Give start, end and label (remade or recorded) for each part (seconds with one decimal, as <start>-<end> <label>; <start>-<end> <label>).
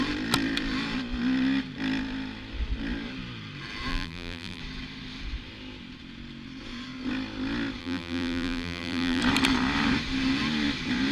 0.0-3.9 recorded; 3.9-4.6 remade; 4.6-7.8 recorded; 7.8-9.2 remade; 9.2-11.1 recorded